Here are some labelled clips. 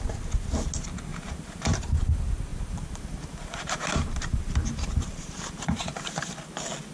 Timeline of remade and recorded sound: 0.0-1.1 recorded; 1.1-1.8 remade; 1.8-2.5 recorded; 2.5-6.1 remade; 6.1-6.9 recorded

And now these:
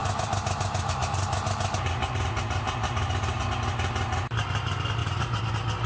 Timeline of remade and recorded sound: 0.0-3.5 remade; 3.5-5.0 recorded; 5.0-5.5 remade; 5.5-5.9 recorded

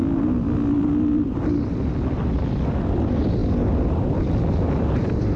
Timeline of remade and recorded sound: 0.0-5.4 recorded

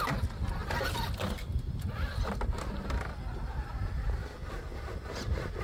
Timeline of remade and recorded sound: 0.0-5.6 recorded

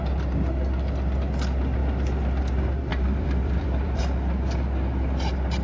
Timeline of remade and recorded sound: 0.0-2.9 recorded; 2.9-4.0 remade; 4.0-5.6 recorded

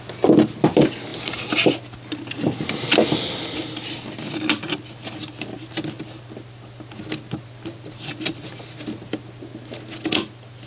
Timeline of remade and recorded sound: 0.0-10.7 recorded

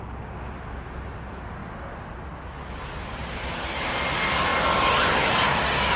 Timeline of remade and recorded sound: 0.0-6.0 recorded

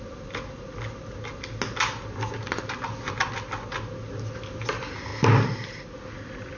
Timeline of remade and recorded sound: 0.0-6.6 recorded